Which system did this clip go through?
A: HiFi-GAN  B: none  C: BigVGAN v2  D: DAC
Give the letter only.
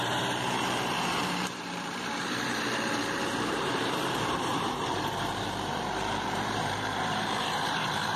C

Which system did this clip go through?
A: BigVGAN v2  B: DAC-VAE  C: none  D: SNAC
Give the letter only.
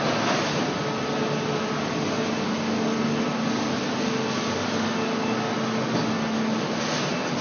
C